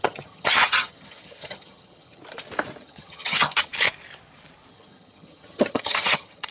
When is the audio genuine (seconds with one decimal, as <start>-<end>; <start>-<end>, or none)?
2.2-2.8; 3.7-4.7